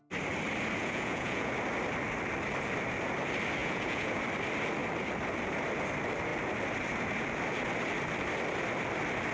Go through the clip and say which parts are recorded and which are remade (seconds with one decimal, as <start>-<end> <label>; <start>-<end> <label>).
0.0-0.8 recorded; 0.8-1.5 remade; 1.5-3.6 recorded; 3.6-4.2 remade; 4.2-9.3 recorded